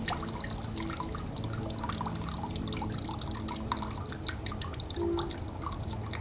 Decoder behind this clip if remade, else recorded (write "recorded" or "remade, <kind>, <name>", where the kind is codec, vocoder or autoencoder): recorded